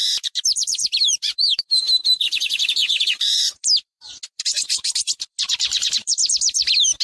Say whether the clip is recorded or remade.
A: remade